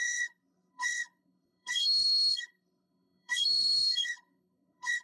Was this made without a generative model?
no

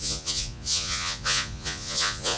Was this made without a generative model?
no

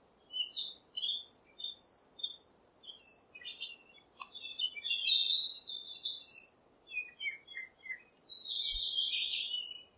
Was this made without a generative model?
yes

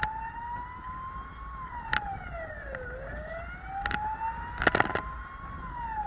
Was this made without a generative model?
yes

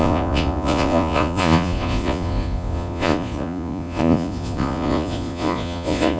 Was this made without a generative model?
no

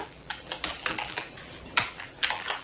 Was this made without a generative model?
no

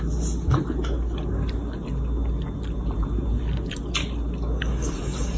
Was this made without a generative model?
yes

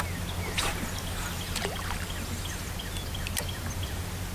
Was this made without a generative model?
yes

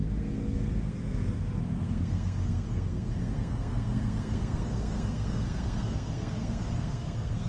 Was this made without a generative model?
no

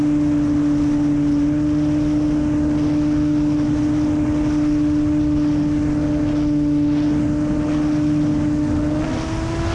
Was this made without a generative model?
yes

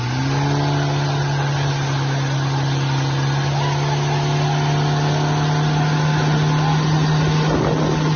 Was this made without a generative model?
yes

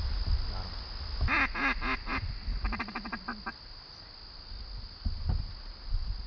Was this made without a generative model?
yes